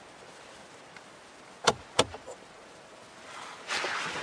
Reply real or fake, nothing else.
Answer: real